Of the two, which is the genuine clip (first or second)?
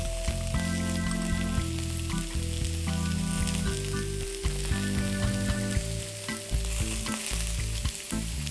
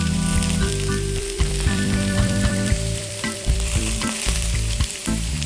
first